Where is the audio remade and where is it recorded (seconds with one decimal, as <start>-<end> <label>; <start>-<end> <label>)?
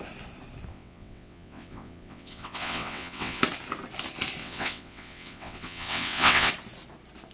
0.0-0.7 recorded; 0.7-3.4 remade; 3.4-4.4 recorded; 4.4-6.5 remade; 6.5-7.3 recorded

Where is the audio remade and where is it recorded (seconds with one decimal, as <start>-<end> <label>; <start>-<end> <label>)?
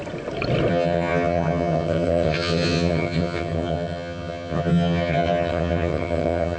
0.0-0.7 recorded; 0.7-6.6 remade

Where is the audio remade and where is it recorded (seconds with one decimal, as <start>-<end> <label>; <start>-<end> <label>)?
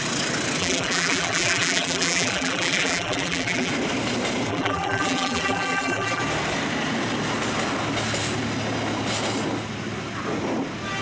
0.0-0.6 recorded; 0.6-3.7 remade; 3.7-4.5 recorded; 4.5-6.2 remade; 6.2-11.0 recorded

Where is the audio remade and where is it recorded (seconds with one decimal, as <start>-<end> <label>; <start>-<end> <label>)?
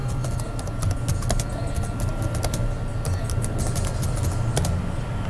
0.0-5.3 recorded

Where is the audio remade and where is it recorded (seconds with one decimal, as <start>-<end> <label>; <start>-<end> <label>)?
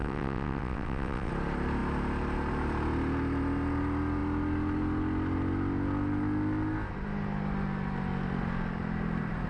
0.0-1.3 remade; 1.3-9.5 recorded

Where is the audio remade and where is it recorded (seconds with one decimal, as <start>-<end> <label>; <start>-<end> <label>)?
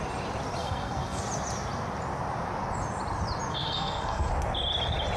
0.0-0.6 recorded; 0.6-1.2 remade; 1.2-3.5 recorded; 3.5-4.3 remade; 4.3-5.2 recorded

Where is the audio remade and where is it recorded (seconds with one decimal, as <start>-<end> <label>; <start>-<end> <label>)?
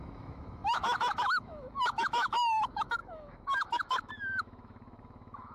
0.0-5.5 remade